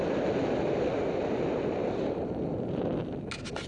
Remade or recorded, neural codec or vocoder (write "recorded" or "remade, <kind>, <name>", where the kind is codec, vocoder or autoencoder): recorded